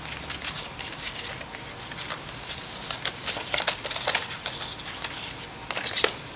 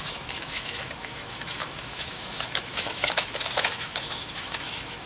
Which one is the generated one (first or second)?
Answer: second